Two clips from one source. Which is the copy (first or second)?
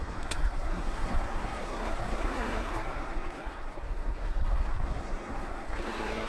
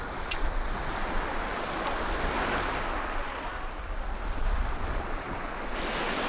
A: first